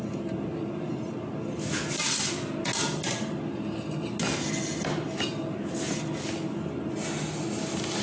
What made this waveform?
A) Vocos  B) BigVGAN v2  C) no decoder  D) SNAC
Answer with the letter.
C